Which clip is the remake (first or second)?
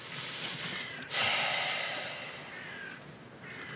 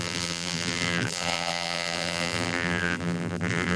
second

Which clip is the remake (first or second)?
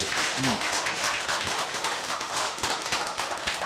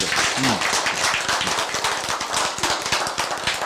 first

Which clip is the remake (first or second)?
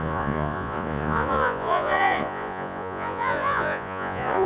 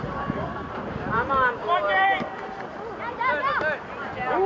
first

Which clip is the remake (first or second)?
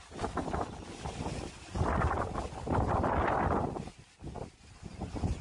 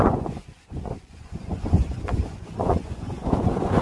second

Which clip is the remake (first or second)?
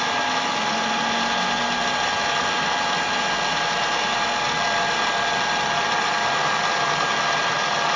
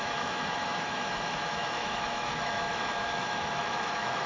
second